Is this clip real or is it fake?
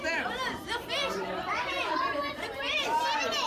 fake